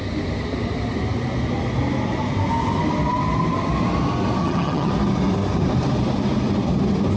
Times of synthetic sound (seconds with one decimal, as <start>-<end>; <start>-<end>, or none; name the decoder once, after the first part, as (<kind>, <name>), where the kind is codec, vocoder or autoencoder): 4.4-4.9 (vocoder, HiFi-GAN)